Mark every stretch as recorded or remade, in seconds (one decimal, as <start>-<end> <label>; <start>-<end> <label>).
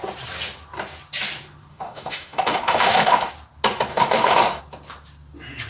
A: 0.0-1.7 recorded; 1.7-3.3 remade; 3.3-3.9 recorded; 3.9-4.6 remade; 4.6-5.7 recorded